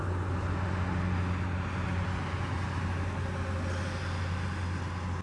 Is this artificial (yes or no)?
no